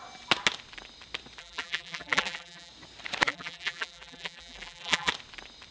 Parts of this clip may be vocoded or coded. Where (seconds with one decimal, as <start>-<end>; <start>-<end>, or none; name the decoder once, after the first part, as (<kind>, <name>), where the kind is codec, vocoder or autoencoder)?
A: 1.4-2.7 (vocoder, BigVGAN v2); 3.3-5.1